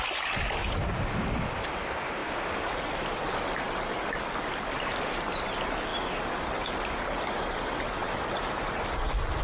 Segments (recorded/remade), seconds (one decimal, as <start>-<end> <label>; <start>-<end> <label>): 0.0-9.4 recorded

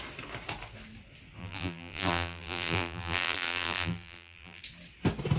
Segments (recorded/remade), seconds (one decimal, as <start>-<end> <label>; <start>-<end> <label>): 0.0-1.4 recorded; 1.4-4.6 remade; 4.6-5.4 recorded

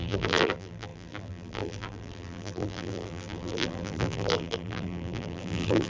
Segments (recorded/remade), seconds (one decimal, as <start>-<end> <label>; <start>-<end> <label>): 0.0-5.9 remade

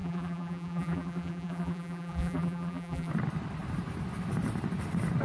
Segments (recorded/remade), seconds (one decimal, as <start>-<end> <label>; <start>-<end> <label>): 0.0-3.1 remade; 3.1-5.2 recorded

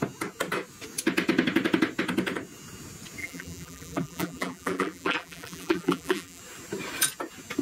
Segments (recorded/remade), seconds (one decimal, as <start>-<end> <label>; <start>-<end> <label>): 0.0-3.2 recorded; 3.2-6.4 remade; 6.4-7.6 recorded

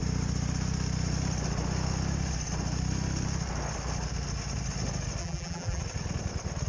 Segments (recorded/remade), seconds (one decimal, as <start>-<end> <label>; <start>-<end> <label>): 0.0-5.2 recorded; 5.2-5.8 remade; 5.8-6.7 recorded